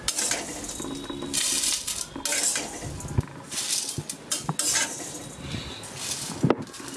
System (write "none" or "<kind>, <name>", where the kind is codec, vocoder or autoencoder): none